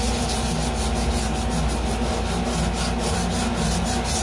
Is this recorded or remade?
recorded